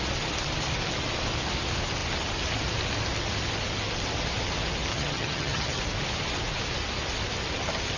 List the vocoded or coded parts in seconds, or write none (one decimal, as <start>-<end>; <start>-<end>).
4.9-5.8